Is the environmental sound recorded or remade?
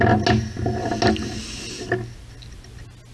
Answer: recorded